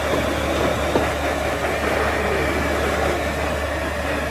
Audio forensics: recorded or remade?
recorded